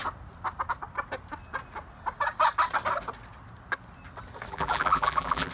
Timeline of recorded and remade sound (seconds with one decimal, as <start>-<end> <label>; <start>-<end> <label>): 0.0-4.5 recorded; 4.5-5.5 remade